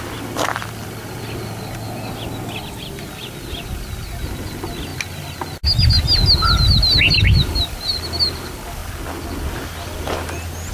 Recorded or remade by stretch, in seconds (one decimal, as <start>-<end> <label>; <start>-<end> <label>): 0.0-10.7 recorded